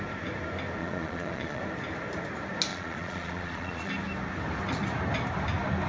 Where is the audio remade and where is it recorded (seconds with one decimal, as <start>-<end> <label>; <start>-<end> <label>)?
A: 0.0-0.8 recorded; 0.8-1.6 remade; 1.6-2.7 recorded; 2.7-3.9 remade; 3.9-5.9 recorded